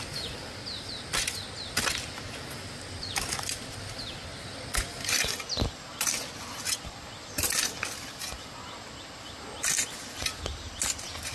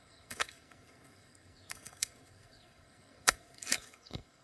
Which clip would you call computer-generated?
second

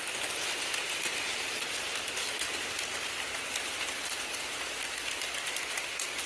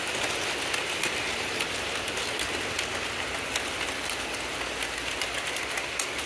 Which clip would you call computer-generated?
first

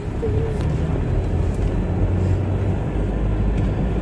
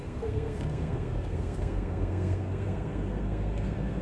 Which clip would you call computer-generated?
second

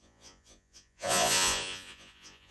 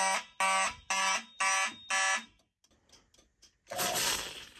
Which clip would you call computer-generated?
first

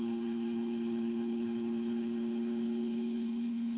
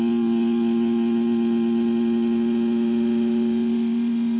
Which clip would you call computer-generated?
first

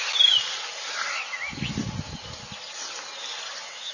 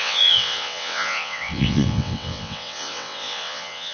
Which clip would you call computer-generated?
second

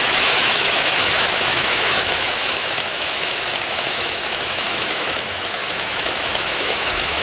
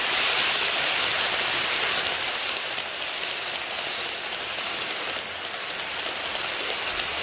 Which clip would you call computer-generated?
first